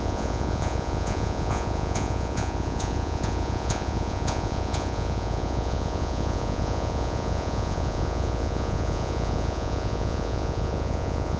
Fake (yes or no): yes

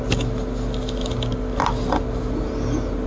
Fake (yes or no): no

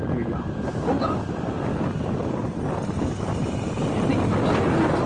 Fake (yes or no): no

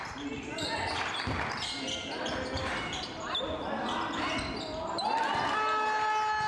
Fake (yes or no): no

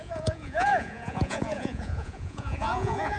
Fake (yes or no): yes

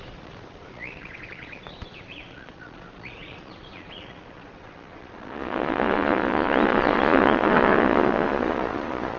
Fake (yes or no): yes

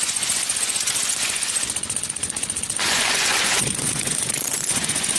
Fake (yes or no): yes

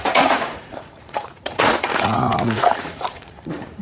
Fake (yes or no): yes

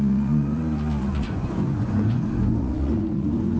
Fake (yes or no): yes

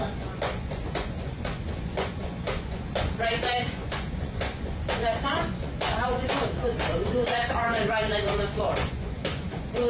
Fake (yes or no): yes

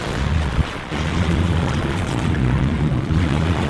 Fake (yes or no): yes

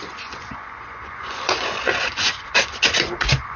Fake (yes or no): yes